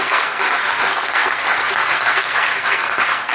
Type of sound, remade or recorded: remade